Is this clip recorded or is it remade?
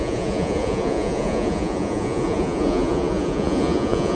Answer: remade